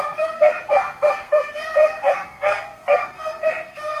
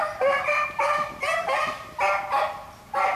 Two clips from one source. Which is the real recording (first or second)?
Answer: second